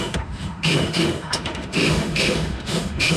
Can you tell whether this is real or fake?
fake